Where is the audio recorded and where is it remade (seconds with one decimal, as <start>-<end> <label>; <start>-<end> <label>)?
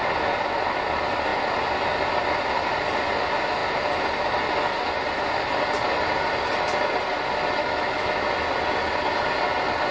0.0-7.6 recorded; 7.6-8.2 remade; 8.2-9.9 recorded